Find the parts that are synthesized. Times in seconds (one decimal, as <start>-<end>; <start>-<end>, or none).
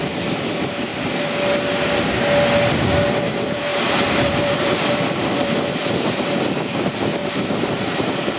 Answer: 0.0-0.9; 3.1-7.2; 7.7-8.4